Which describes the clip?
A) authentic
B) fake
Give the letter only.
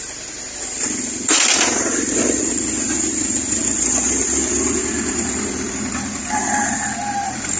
A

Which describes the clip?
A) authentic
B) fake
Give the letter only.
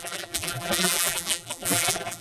B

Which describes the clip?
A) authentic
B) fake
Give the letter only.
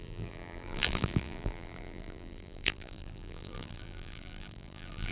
B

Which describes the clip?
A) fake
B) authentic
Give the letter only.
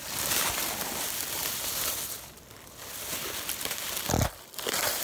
B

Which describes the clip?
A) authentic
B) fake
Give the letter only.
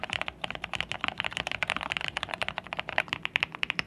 B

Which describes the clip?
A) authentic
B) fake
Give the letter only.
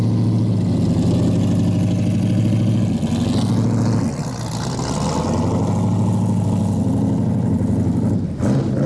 A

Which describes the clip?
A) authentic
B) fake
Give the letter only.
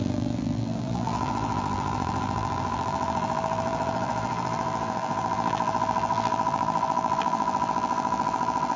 B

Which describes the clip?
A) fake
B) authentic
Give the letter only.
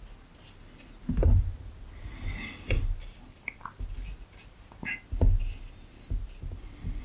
B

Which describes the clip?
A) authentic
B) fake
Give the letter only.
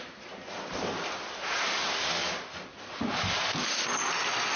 A